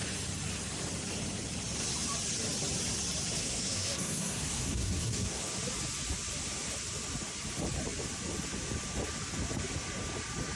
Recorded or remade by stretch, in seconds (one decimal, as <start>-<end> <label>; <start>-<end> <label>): 0.0-3.4 recorded; 3.4-5.4 remade; 5.4-10.6 recorded